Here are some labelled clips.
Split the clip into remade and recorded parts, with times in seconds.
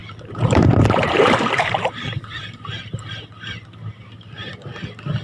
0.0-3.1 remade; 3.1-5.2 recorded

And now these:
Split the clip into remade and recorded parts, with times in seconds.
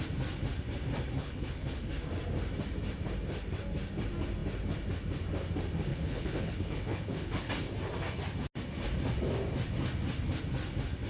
0.0-1.2 recorded; 1.2-1.9 remade; 1.9-5.9 recorded; 5.9-7.5 remade; 7.5-11.1 recorded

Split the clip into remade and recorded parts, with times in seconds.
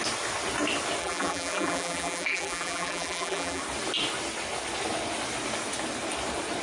0.0-1.0 recorded; 1.0-3.6 remade; 3.6-6.6 recorded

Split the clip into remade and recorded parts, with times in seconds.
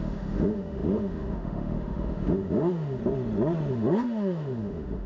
0.0-3.0 remade; 3.0-3.7 recorded; 3.7-5.1 remade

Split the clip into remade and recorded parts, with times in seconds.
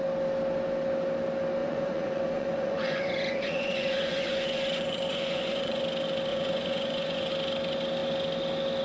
0.0-1.6 recorded; 1.6-5.8 remade; 5.8-6.3 recorded; 6.3-7.3 remade; 7.3-8.8 recorded